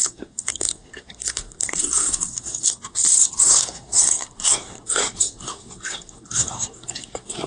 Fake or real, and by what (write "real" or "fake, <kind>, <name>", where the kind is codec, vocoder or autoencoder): fake, codec, SNAC